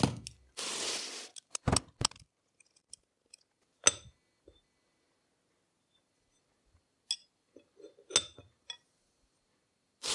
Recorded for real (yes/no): yes